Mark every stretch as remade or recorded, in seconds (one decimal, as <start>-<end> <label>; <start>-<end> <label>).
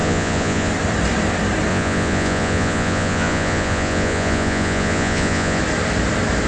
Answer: 0.0-0.7 remade; 0.7-1.7 recorded; 1.7-5.6 remade; 5.6-6.5 recorded